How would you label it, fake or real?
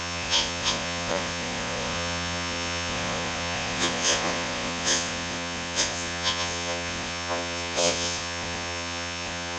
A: fake